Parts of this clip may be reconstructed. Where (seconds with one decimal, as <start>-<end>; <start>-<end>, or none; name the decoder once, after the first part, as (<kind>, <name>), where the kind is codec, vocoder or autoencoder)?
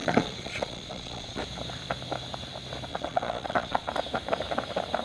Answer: 0.0-1.4 (vocoder, Vocos); 2.9-3.9